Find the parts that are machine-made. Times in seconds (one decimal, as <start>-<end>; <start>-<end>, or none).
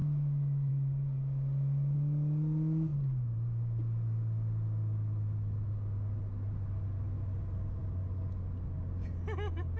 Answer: none